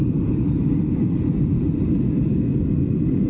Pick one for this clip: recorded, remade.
recorded